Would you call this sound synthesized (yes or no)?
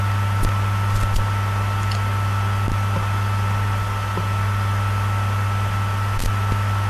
no